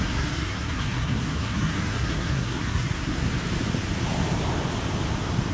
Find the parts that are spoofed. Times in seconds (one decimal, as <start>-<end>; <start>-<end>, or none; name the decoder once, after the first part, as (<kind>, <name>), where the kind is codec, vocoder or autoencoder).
0.0-3.3 (codec, SNAC)